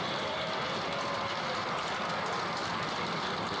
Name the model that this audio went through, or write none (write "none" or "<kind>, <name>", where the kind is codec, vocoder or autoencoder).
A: none